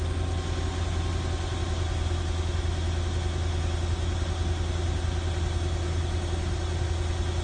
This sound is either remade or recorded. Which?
recorded